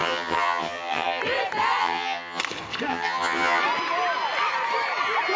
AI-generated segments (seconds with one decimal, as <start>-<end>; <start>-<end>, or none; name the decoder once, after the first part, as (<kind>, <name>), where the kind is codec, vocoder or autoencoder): 0.0-1.2 (vocoder, HiFi-GAN); 1.8-2.4; 2.9-3.6